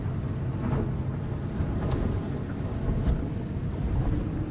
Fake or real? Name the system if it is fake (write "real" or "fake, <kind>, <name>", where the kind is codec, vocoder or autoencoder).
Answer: real